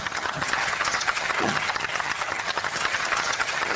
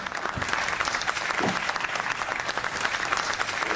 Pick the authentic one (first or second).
second